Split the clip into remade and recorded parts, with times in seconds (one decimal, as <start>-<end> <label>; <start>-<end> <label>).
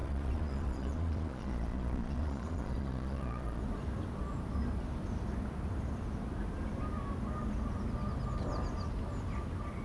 0.0-3.6 remade; 3.6-9.8 recorded